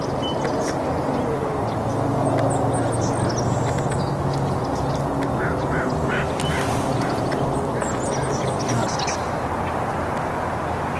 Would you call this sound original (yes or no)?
yes